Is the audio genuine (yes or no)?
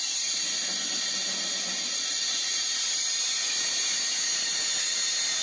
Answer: yes